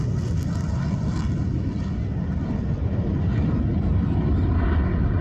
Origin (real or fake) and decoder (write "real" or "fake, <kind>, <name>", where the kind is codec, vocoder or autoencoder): real